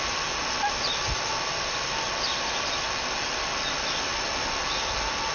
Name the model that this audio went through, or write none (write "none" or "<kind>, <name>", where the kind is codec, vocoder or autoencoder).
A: none